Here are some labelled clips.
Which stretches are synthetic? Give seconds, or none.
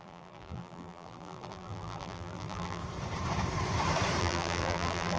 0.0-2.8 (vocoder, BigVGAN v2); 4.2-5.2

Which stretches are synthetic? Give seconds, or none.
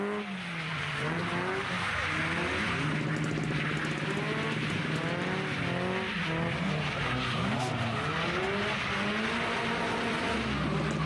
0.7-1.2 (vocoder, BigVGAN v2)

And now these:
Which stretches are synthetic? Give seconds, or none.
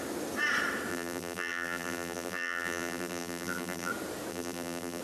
0.9-3.9 (vocoder, BigVGAN v2); 4.3-5.0